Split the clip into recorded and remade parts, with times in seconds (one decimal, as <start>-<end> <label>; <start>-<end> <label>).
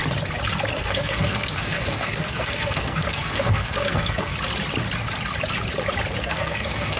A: 0.0-0.8 recorded; 0.8-4.3 remade; 4.3-6.2 recorded; 6.2-7.0 remade